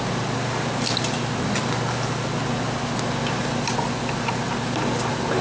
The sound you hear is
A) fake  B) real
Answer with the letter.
B